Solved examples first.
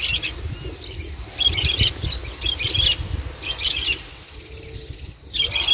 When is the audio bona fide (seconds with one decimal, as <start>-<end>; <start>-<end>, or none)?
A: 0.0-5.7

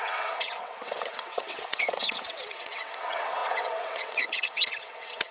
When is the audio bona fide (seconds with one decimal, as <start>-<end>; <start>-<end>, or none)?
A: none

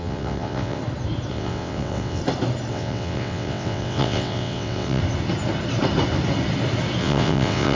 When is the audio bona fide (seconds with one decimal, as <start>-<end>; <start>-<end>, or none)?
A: 0.8-1.3; 2.2-2.7; 5.0-7.0

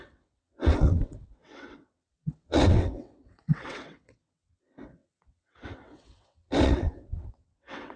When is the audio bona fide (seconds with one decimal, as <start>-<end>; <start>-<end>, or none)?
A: none

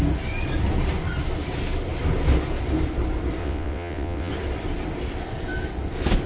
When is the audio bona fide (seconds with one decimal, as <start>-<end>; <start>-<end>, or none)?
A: 0.0-3.4; 4.3-6.3

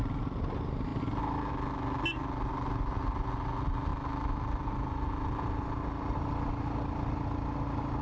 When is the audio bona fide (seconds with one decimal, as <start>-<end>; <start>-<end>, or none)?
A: 0.0-8.0

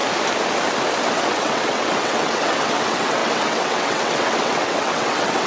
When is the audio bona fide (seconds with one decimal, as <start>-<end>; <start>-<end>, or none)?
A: 0.0-1.1

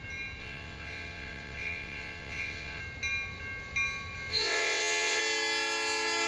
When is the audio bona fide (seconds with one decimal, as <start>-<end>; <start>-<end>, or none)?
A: 0.0-0.4; 2.8-4.3; 5.2-6.3